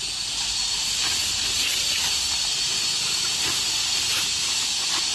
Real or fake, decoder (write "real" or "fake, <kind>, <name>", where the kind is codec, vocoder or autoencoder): real